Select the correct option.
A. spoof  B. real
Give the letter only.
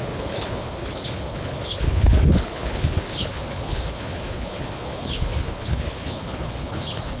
A